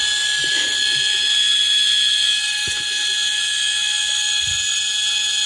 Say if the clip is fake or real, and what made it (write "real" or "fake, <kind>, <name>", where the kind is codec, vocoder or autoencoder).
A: real